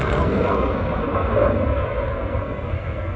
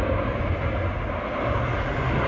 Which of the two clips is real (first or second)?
second